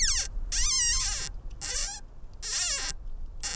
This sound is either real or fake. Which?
real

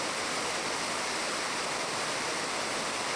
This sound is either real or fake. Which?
real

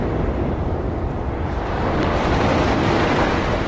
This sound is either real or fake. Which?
real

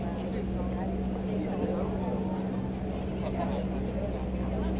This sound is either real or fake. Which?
real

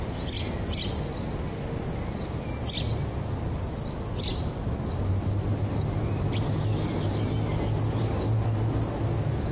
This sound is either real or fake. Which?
real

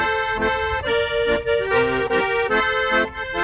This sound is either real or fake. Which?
real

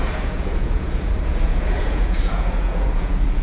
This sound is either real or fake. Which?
fake